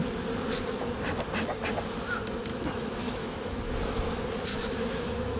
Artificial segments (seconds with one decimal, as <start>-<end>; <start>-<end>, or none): 2.5-3.6; 4.5-5.4